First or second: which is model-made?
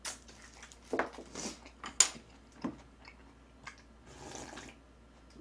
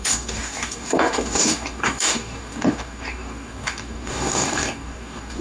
second